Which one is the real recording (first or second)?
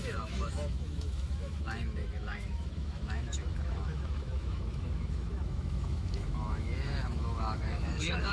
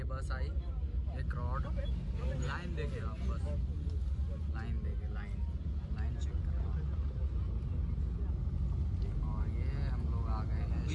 second